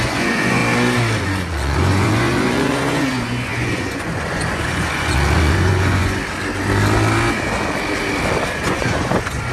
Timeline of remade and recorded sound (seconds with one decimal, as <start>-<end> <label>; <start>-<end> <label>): 0.0-0.6 remade; 0.6-1.2 recorded; 1.2-6.2 remade; 6.2-8.6 recorded; 8.6-9.5 remade